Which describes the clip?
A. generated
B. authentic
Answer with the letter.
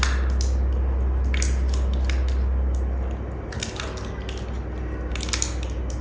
B